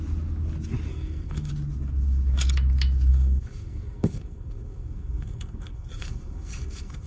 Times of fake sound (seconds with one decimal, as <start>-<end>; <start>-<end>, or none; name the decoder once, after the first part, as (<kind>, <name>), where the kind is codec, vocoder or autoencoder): 0.9-1.5 (codec, SNAC); 3.1-7.1